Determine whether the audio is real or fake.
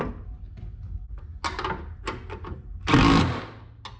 real